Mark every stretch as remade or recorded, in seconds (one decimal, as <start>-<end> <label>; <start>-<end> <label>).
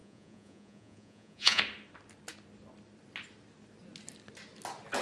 0.0-1.6 remade; 1.6-5.0 recorded